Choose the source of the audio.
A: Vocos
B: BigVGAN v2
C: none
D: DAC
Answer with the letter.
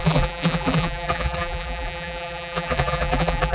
B